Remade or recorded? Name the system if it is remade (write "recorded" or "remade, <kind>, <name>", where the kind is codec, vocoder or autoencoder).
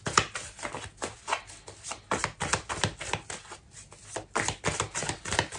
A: recorded